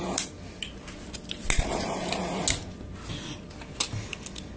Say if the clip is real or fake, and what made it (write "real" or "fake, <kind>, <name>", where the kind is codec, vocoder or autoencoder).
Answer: real